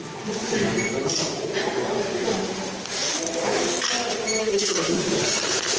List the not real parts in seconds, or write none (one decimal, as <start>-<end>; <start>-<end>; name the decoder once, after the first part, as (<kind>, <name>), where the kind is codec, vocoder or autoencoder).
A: 4.4-5.0 (codec, SNAC)